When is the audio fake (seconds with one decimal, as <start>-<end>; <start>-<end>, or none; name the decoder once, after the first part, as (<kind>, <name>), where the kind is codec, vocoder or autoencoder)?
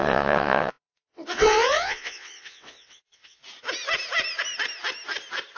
0.0-3.4 (vocoder, WaveNeXt)